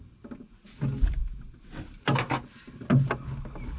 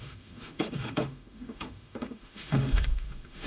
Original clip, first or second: first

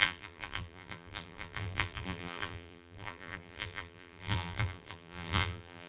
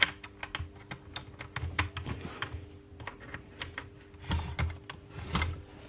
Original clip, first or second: second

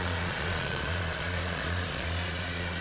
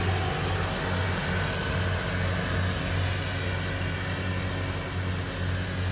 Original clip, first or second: second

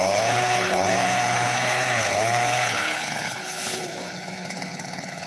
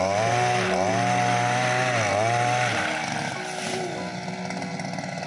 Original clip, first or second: second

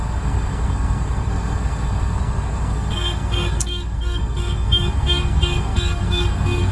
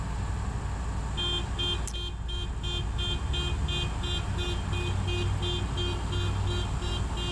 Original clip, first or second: second